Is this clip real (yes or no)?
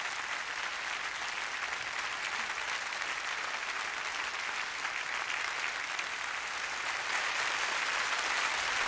yes